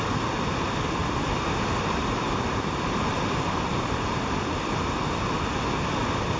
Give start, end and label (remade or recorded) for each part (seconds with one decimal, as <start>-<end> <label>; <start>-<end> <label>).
0.0-1.0 recorded; 1.0-4.8 remade; 4.8-6.4 recorded

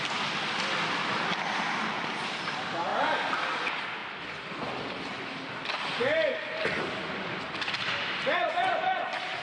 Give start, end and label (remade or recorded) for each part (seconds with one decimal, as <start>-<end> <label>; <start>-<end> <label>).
0.0-9.4 recorded